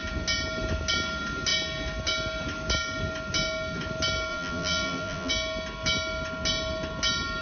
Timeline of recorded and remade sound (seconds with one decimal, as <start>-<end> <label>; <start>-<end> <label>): 0.0-4.3 recorded; 4.3-5.3 remade; 5.3-7.4 recorded